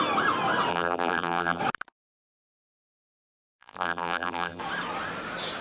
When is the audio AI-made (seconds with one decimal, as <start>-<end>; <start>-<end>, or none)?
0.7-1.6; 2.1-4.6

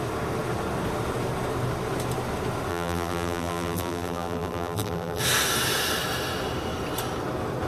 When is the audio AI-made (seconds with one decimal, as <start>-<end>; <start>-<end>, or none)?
2.7-5.2

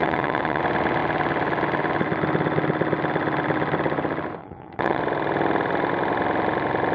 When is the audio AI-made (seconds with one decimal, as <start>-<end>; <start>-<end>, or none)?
0.0-0.6; 4.4-5.0